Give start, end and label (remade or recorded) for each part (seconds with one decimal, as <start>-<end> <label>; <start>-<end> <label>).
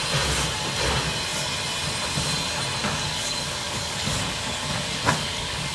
0.0-2.8 recorded; 2.8-5.7 remade